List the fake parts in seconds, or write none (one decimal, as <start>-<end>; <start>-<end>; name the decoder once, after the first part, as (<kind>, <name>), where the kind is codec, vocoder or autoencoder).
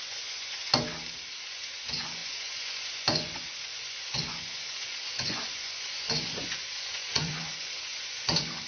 0.0-0.7 (vocoder, Vocos); 1.5-8.7